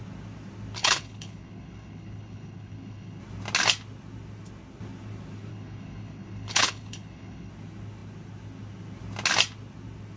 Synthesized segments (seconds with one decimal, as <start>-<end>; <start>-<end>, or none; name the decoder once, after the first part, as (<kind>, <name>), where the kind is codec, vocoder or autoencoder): 0.8-3.2 (codec, HILCodec); 5.5-7.5